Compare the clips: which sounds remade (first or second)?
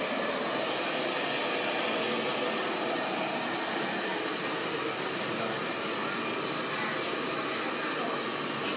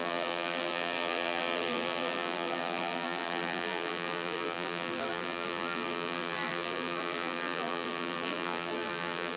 second